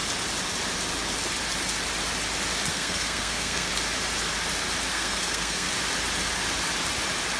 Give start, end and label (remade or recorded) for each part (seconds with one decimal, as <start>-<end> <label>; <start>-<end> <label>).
0.0-2.7 recorded; 2.7-3.7 remade; 3.7-4.9 recorded; 4.9-5.7 remade; 5.7-7.4 recorded